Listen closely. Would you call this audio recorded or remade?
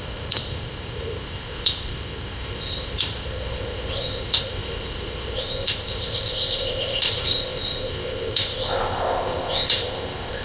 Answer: remade